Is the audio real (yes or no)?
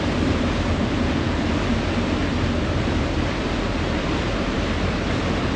no